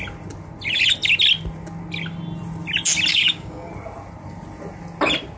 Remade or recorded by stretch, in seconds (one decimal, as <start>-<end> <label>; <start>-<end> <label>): 0.0-3.1 recorded; 3.1-3.7 remade; 3.7-5.4 recorded